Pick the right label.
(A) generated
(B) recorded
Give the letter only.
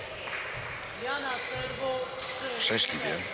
B